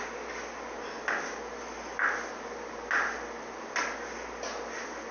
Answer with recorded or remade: recorded